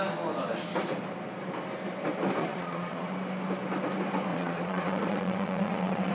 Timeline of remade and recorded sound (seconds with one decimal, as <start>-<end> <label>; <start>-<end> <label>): 0.0-2.4 recorded; 2.4-3.1 remade; 3.1-4.3 recorded; 4.3-6.1 remade